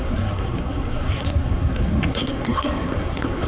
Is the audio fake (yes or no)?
yes